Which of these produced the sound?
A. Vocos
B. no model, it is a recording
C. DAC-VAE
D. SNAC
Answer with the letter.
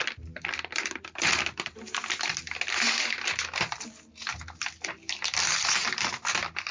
B